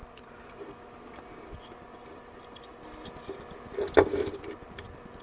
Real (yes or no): yes